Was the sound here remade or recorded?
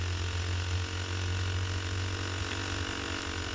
recorded